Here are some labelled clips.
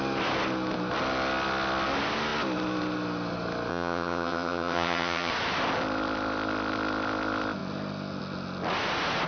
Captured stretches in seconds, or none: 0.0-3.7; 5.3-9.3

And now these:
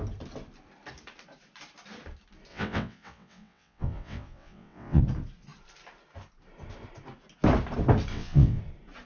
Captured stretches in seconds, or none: 0.0-2.5; 5.0-8.1; 8.6-9.1

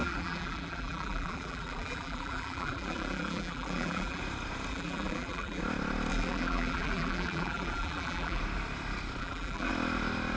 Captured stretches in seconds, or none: 4.2-4.7; 5.6-6.1; 8.4-9.2; 9.7-10.4

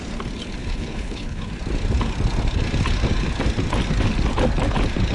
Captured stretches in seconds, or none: 0.0-0.6; 1.5-5.1

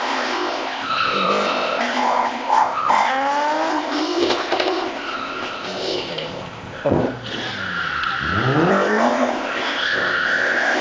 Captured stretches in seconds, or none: 3.1-3.7; 7.0-8.7